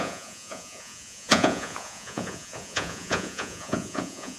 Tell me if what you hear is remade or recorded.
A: remade